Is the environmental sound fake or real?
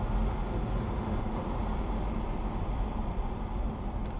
real